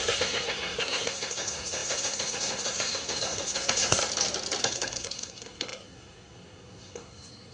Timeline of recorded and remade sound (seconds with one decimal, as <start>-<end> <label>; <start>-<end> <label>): 0.0-4.0 remade; 4.0-4.6 recorded; 4.6-7.5 remade